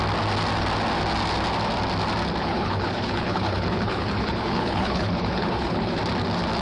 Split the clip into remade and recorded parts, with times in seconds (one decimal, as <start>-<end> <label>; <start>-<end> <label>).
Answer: 0.0-2.4 recorded; 2.4-6.0 remade; 6.0-6.6 recorded